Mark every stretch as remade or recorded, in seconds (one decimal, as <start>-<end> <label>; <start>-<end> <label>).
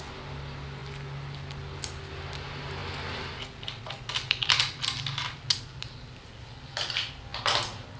0.0-8.0 recorded